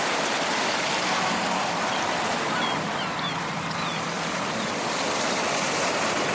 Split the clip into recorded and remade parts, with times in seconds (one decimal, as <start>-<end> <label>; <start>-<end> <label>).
0.0-6.3 recorded